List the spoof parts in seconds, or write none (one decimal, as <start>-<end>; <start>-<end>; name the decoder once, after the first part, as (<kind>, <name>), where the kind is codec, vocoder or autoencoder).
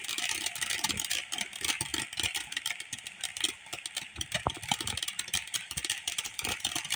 1.9-6.1 (vocoder, BigVGAN v2)